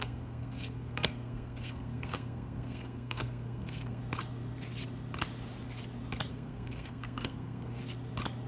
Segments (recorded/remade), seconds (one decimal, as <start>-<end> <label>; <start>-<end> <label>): 0.0-4.0 remade; 4.0-6.3 recorded; 6.3-7.8 remade; 7.8-8.5 recorded